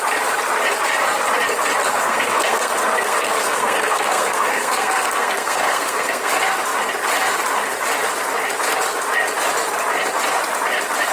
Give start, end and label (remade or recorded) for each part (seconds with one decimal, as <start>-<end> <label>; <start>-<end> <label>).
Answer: 0.0-1.9 recorded; 1.9-6.3 remade; 6.3-11.1 recorded